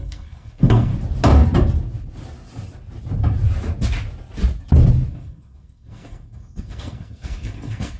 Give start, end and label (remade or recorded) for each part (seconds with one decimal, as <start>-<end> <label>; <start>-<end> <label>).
0.0-0.9 remade; 0.9-5.1 recorded; 5.1-8.0 remade